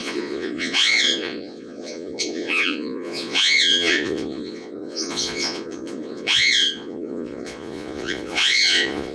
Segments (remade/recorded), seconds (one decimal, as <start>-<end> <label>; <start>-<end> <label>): 0.0-9.1 remade